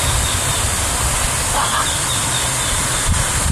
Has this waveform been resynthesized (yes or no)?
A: no